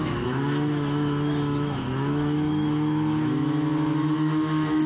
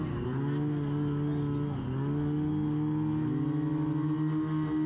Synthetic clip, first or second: first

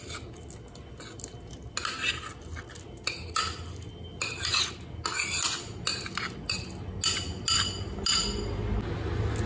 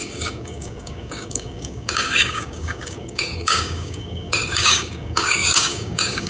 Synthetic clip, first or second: second